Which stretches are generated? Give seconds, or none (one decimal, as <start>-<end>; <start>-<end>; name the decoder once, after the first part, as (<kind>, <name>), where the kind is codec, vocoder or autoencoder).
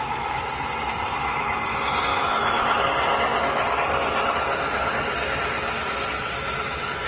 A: 2.1-2.8 (autoencoder, DAC-VAE)